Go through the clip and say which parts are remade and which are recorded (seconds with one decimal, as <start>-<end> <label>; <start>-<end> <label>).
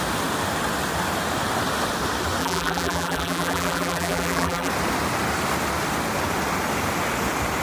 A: 0.0-2.4 recorded; 2.4-4.7 remade; 4.7-7.6 recorded